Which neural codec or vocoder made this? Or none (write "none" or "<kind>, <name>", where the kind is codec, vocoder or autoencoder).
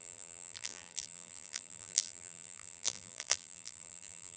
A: vocoder, BigVGAN v2